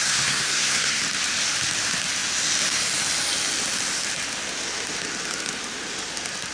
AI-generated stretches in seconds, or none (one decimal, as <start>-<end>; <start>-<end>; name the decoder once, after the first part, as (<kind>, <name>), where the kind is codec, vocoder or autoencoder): 0.0-1.0 (codec, SNAC)

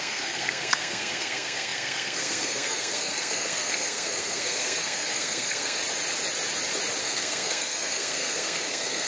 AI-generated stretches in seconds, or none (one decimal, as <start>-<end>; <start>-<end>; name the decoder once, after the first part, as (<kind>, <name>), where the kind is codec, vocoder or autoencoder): 0.0-5.8 (codec, SNAC); 7.0-9.1

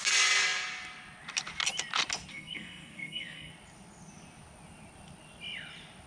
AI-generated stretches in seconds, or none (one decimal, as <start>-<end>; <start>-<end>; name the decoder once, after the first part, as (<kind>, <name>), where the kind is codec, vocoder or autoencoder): 2.3-3.5 (codec, SNAC)